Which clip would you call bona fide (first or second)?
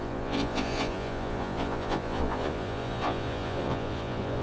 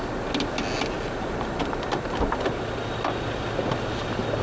second